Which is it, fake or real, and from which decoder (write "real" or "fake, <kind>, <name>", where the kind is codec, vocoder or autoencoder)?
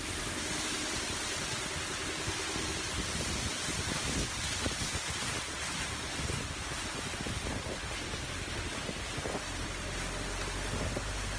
real